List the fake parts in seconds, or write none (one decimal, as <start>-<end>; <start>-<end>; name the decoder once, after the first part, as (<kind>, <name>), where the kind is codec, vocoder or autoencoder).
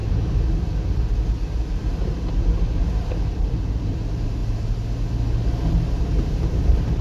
2.4-4.4 (vocoder, BigVGAN v2); 5.9-7.0